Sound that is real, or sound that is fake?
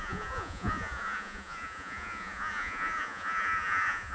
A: fake